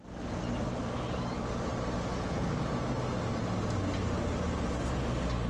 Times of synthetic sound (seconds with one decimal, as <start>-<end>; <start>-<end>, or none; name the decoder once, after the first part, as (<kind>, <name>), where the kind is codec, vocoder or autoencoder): 2.1-2.7 (vocoder, Vocos)